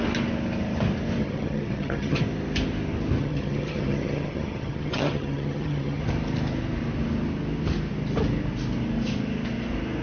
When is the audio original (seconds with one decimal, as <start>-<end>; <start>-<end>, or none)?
0.0-1.2; 2.2-3.2; 6.0-10.0